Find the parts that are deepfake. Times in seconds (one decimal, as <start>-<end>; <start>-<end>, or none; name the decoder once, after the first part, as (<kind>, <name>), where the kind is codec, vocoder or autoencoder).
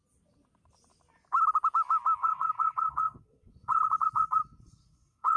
2.2-5.4 (vocoder, WaveNeXt)